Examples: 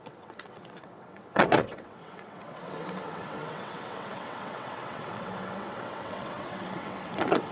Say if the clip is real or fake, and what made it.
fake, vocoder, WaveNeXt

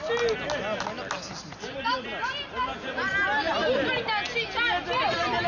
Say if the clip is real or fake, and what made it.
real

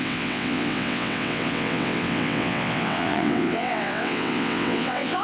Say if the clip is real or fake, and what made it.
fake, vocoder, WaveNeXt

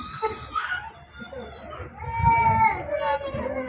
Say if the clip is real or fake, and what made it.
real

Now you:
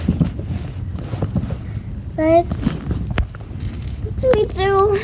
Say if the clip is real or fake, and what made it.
real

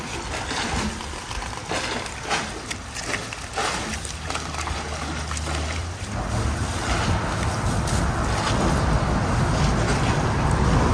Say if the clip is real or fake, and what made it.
real